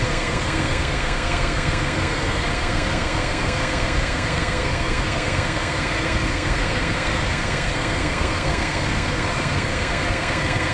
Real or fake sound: fake